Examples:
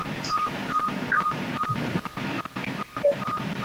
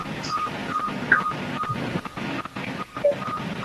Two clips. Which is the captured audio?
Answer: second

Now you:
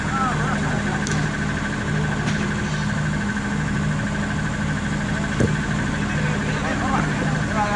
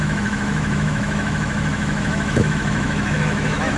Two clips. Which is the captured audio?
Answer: first